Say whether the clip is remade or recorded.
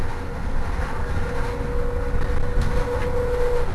recorded